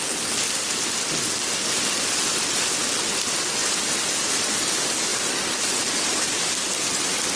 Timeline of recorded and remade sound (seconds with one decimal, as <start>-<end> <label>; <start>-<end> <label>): 0.0-7.4 recorded